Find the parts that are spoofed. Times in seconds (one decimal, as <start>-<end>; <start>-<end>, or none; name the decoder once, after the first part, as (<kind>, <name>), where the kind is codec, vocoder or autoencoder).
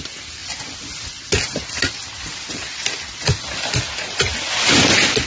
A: none